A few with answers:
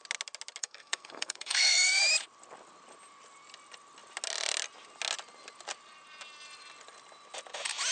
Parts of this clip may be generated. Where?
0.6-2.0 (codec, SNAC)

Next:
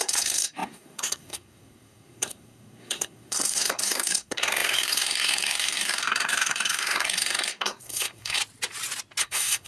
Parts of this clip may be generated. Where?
0.0-8.4 (codec, SNAC); 9.2-9.7

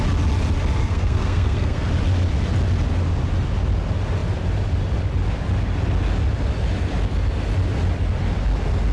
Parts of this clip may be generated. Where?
0.8-1.9 (codec, SNAC)